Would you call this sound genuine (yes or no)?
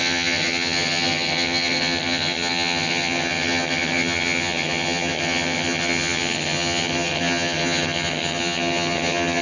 no